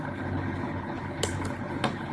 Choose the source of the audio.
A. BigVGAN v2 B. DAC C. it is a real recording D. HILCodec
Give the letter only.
D